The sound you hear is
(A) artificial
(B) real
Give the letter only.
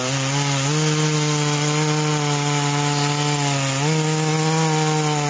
B